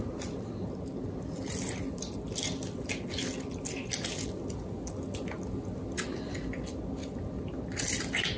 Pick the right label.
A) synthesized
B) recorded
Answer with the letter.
B